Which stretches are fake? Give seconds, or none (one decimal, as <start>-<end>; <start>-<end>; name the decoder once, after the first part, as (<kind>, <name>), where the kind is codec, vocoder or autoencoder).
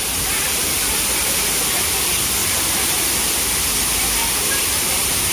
2.4-3.2 (vocoder, BigVGAN v2); 4.2-5.3